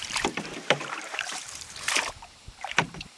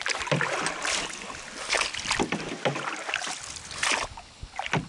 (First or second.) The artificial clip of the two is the first